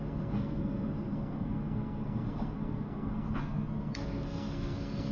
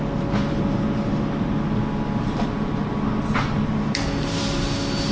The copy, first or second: first